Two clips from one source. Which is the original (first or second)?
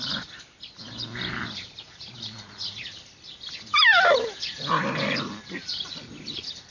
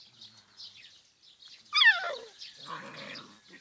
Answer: second